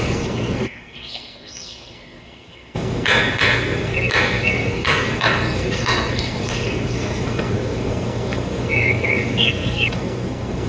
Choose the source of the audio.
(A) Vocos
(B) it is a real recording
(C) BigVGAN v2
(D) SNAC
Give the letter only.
D